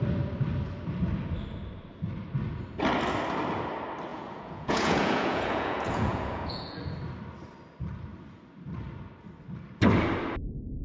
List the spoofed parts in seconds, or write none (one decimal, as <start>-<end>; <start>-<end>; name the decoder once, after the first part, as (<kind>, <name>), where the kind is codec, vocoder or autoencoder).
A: 4.1-6.8 (vocoder, Vocos)